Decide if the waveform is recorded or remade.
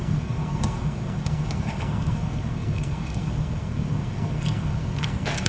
remade